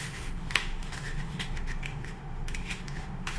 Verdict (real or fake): fake